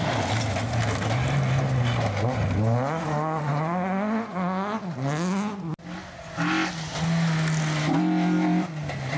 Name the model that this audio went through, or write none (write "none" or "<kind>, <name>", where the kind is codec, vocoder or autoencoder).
none